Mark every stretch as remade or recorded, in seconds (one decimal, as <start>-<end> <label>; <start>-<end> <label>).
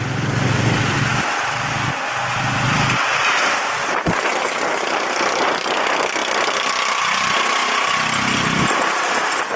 0.0-9.6 recorded